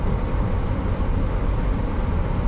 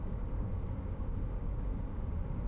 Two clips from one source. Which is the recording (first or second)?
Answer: first